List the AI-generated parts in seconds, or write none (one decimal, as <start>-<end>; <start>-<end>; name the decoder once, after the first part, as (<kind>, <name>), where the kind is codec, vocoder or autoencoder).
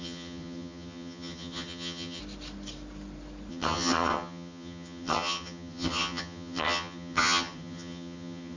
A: 0.0-2.2 (vocoder, HiFi-GAN); 3.5-8.6